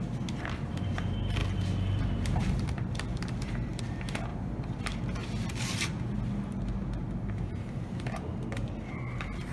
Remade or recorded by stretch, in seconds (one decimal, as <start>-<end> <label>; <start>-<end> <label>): 0.0-1.4 recorded; 1.4-3.8 remade; 3.8-4.3 recorded; 4.3-4.8 remade; 4.8-9.5 recorded